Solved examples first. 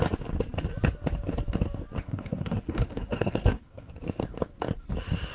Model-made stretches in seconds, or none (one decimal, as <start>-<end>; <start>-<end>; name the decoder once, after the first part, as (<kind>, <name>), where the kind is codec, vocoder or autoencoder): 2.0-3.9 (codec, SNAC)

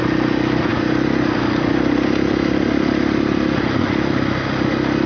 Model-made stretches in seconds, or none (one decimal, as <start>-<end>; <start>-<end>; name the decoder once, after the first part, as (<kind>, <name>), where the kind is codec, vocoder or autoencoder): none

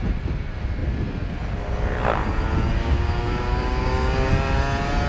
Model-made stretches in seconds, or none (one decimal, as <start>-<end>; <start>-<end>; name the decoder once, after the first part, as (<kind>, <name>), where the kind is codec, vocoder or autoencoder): 2.8-4.3 (codec, DAC)